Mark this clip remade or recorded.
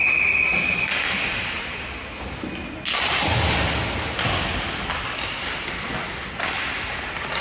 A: recorded